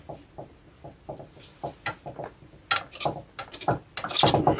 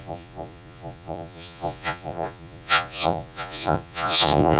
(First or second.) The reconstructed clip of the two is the second